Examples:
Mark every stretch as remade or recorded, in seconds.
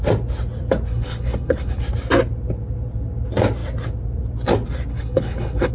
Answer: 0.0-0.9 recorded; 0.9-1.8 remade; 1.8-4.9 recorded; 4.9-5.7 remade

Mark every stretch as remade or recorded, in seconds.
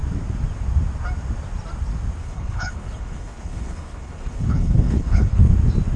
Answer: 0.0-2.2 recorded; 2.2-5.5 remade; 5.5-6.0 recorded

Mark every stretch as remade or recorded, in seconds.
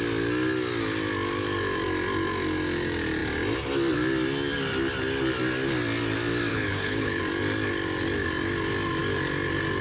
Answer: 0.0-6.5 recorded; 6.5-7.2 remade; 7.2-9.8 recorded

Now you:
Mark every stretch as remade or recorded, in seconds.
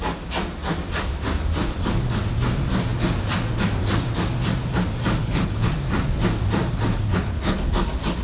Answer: 0.0-5.2 recorded; 5.2-5.7 remade; 5.7-7.1 recorded; 7.1-7.7 remade; 7.7-8.2 recorded